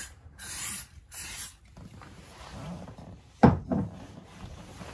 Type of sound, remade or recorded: remade